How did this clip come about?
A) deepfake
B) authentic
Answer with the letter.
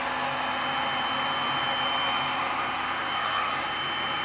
B